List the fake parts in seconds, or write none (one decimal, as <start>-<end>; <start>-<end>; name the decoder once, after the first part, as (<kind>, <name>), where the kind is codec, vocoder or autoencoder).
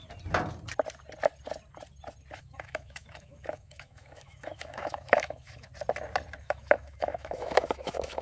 2.4-5.7 (autoencoder, DAC-VAE); 6.4-8.2